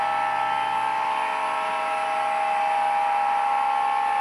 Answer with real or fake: real